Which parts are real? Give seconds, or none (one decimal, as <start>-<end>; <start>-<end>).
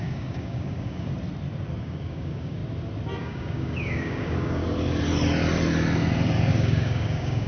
1.1-1.8; 2.6-3.2; 4.6-6.5